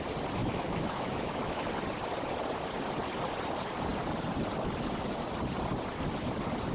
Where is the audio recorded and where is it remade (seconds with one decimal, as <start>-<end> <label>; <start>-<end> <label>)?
0.0-0.4 recorded; 0.4-1.7 remade; 1.7-6.7 recorded